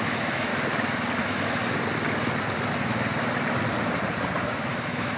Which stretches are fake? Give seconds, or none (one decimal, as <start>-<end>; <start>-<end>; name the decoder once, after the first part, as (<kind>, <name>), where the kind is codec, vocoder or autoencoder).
0.0-0.5 (autoencoder, DAC-VAE); 1.2-1.6; 4.7-5.2